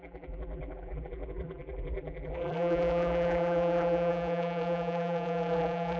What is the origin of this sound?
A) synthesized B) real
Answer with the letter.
A